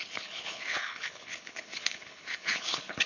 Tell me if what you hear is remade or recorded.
remade